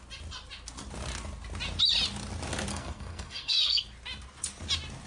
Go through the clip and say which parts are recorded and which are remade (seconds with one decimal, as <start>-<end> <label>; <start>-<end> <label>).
0.0-2.7 recorded; 2.7-3.8 remade; 3.8-5.1 recorded